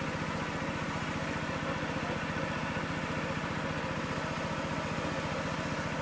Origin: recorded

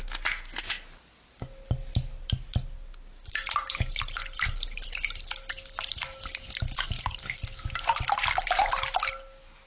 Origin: recorded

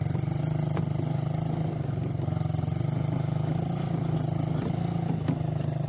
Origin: recorded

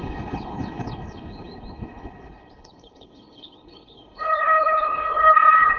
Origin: remade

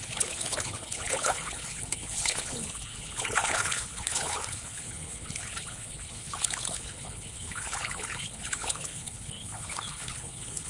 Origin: remade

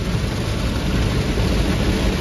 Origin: recorded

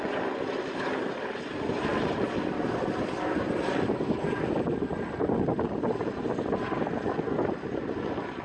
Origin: recorded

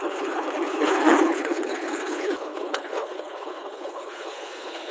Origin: remade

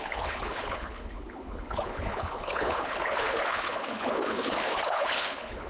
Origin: remade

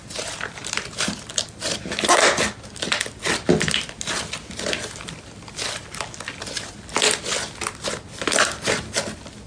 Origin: recorded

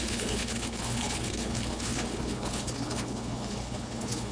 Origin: remade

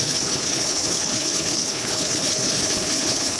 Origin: remade